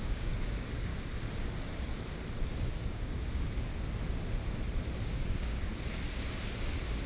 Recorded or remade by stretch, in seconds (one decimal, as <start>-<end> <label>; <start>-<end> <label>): 0.0-0.9 remade; 0.9-2.7 recorded; 2.7-3.7 remade; 3.7-5.0 recorded; 5.0-5.7 remade; 5.7-7.1 recorded